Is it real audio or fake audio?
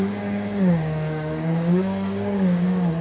fake